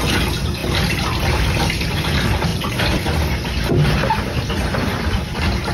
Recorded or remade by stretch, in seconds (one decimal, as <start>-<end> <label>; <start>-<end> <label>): 0.0-5.7 recorded